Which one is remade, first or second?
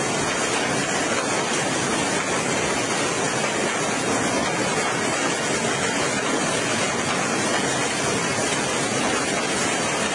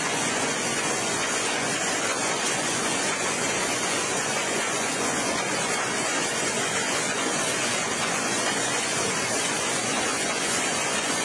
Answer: second